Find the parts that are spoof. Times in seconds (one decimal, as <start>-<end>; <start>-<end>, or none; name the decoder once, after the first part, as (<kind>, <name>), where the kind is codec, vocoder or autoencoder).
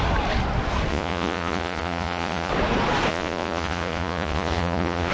0.9-2.5 (vocoder, Vocos); 3.1-5.1